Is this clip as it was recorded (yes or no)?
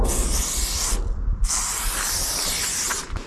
yes